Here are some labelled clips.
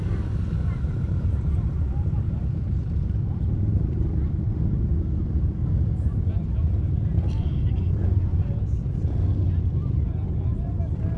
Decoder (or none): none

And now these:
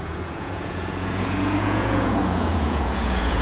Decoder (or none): vocoder, Vocos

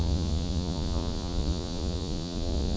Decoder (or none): vocoder, Vocos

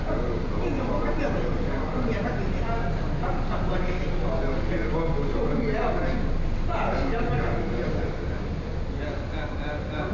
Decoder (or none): none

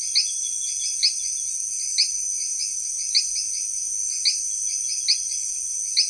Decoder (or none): none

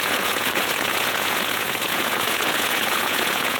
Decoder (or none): vocoder, Vocos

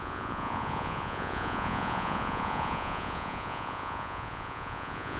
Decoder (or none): vocoder, Vocos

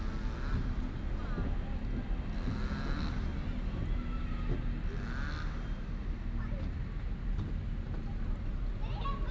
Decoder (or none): none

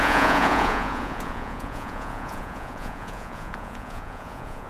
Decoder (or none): vocoder, Vocos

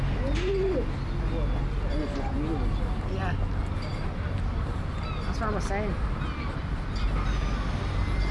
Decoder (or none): none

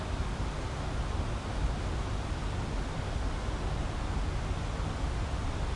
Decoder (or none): none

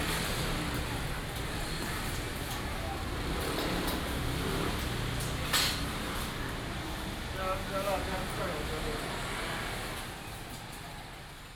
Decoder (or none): none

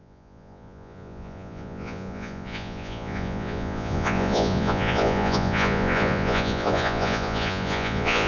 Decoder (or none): vocoder, Vocos